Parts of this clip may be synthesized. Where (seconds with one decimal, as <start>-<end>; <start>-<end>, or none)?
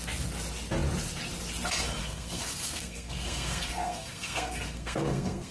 2.0-5.5